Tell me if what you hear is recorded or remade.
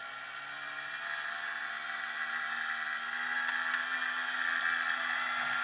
recorded